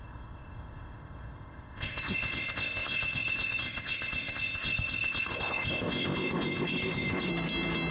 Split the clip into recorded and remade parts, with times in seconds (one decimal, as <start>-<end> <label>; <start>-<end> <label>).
0.0-7.3 remade; 7.3-7.9 recorded